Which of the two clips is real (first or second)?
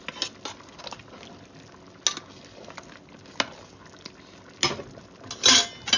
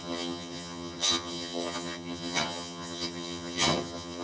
first